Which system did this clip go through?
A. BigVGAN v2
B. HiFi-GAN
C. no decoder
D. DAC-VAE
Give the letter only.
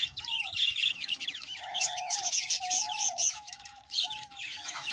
D